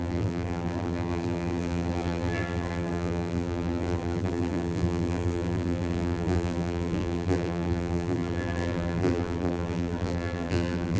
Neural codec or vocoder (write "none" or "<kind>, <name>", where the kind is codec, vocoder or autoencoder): vocoder, BigVGAN v2